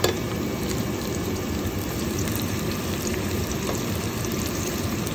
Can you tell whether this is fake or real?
fake